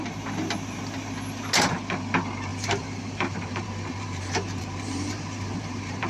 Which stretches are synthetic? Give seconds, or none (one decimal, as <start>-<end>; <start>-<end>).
2.5-6.1

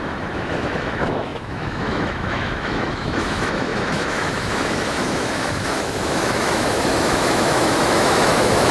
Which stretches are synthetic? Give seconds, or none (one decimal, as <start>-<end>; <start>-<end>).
0.0-8.7

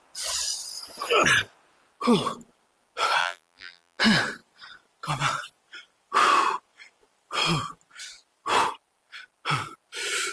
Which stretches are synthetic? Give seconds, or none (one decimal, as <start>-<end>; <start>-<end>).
3.2-4.0